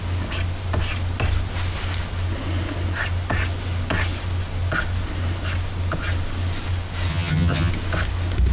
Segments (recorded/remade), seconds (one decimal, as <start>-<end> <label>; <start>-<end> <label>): 0.0-7.1 recorded; 7.1-7.7 remade; 7.7-8.5 recorded